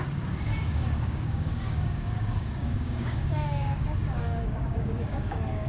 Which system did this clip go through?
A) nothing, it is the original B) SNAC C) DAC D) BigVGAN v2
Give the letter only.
C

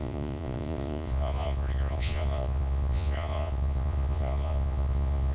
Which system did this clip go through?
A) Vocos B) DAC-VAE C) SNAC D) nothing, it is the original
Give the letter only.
A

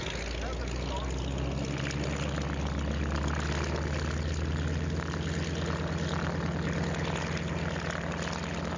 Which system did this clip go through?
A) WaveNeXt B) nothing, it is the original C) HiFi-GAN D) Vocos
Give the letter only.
B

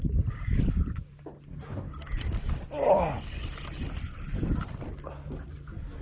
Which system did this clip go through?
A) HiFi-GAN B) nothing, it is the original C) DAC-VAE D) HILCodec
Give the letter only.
B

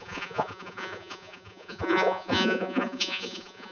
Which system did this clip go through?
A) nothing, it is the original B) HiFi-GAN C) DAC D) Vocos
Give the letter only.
D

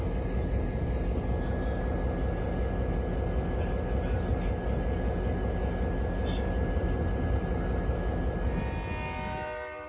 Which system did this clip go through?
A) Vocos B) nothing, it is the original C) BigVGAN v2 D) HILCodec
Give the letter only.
B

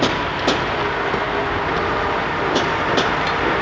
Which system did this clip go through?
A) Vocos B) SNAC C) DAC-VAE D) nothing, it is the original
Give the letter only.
D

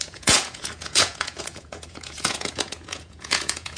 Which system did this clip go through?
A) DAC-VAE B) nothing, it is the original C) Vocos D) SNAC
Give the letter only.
C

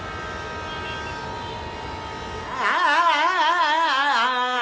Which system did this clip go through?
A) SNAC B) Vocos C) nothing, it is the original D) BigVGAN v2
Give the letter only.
C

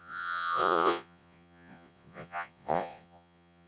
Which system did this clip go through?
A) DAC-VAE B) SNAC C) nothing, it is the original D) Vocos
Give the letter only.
D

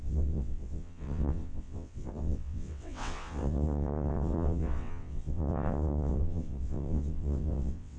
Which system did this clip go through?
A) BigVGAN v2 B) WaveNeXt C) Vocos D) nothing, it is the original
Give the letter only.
B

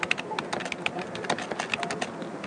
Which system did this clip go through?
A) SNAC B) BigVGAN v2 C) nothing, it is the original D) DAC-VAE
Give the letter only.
C